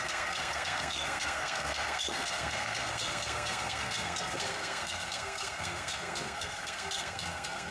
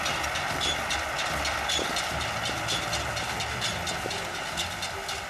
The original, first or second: second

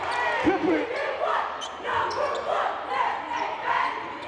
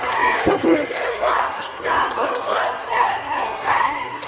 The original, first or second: first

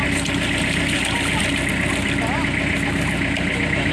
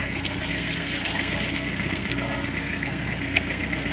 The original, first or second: first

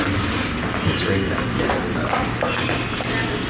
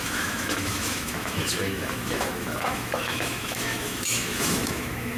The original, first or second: first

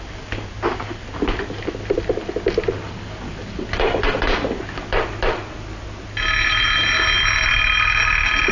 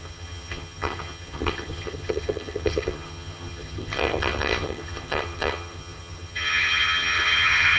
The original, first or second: first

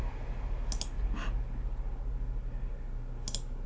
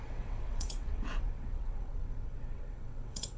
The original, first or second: first